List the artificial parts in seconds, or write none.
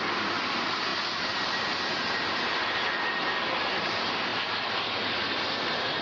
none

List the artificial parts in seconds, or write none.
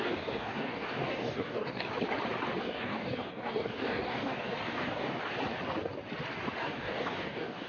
0.0-1.9 (codec, DAC); 2.6-5.2; 6.6-7.7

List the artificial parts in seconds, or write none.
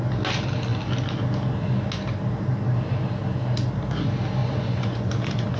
4.4-5.6 (vocoder, Vocos)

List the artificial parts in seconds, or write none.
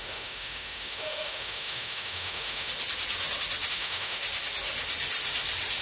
0.0-2.7 (autoencoder, DAC-VAE); 3.7-4.2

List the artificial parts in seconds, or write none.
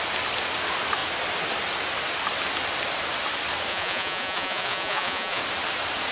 3.7-5.4 (vocoder, Vocos)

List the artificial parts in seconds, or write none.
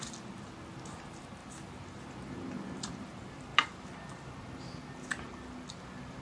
none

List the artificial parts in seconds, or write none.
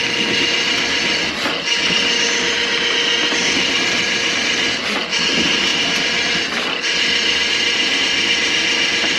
none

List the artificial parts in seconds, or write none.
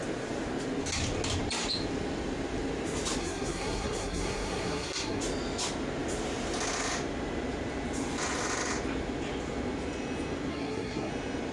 3.2-5.2 (codec, SNAC); 10.5-11.1